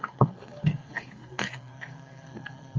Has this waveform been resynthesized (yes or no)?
yes